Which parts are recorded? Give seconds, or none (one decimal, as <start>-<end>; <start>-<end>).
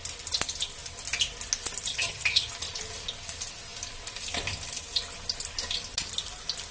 0.0-1.9; 2.5-6.7